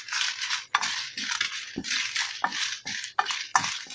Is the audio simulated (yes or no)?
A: no